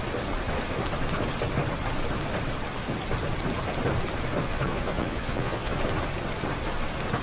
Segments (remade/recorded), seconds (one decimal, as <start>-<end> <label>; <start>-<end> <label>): 0.0-4.4 recorded; 4.4-5.8 remade; 5.8-7.2 recorded